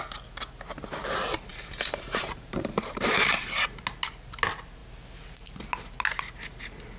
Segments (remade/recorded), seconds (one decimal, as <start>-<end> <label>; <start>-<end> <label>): 0.0-1.5 recorded; 1.5-3.8 remade; 3.8-7.0 recorded